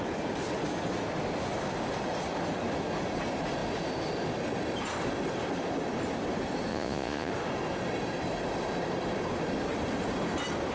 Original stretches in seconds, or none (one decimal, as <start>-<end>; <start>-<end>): 0.0-6.7; 7.3-10.7